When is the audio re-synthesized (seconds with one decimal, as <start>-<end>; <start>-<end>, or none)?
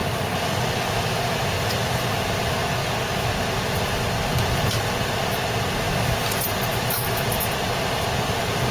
6.7-7.3